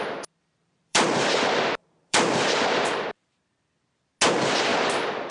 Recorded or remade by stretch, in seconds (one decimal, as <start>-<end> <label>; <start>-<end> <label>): 0.0-0.6 recorded; 0.6-3.4 remade; 3.4-4.7 recorded; 4.7-5.3 remade